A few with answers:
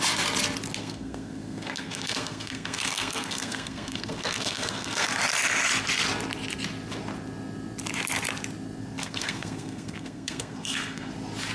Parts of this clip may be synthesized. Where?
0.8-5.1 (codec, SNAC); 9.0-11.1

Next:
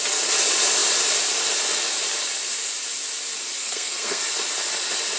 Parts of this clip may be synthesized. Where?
3.6-4.2 (codec, SNAC)

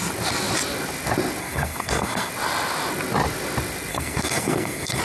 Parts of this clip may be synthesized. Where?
1.4-2.3 (codec, SNAC); 3.9-5.0